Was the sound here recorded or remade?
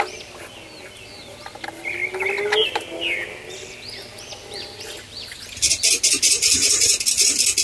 recorded